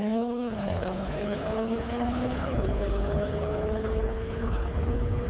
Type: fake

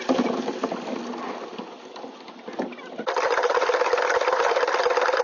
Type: real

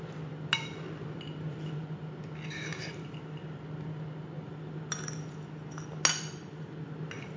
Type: real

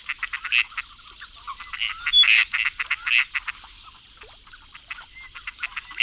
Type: real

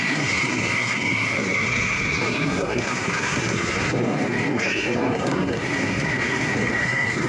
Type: fake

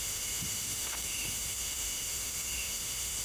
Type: fake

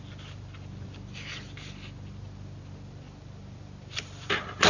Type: real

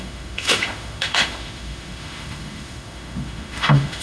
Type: fake